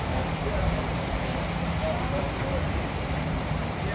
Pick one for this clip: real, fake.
fake